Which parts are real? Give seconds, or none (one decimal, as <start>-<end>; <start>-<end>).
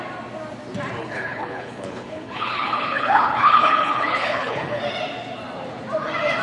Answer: 0.0-1.0; 4.8-6.4